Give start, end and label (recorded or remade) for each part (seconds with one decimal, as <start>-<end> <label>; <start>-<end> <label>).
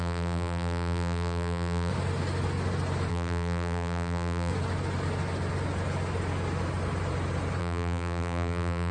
0.0-1.9 remade; 1.9-3.1 recorded; 3.1-4.5 remade; 4.5-7.6 recorded; 7.6-8.9 remade